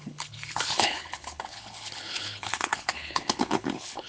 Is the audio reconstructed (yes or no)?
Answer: yes